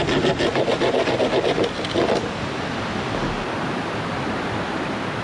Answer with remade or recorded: recorded